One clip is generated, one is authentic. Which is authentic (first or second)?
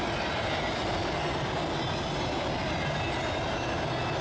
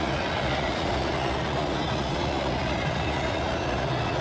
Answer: first